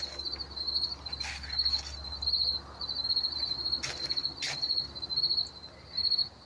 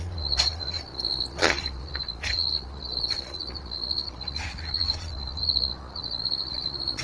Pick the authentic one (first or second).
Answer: first